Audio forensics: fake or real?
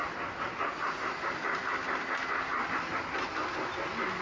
real